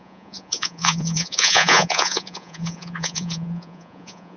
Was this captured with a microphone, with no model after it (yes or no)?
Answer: no